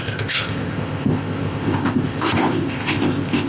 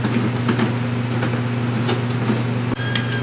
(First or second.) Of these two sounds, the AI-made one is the first